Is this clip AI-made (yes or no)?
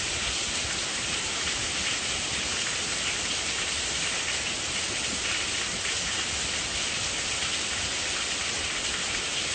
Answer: no